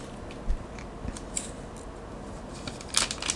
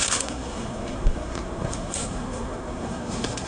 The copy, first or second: second